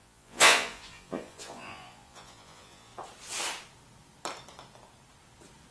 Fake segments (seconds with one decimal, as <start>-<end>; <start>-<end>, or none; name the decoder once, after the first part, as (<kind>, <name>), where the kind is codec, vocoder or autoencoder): 0.0-2.9 (vocoder, Vocos)